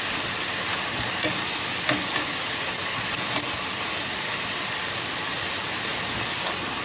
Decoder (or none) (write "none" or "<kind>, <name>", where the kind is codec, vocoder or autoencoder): none